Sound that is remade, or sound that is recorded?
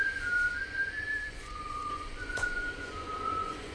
remade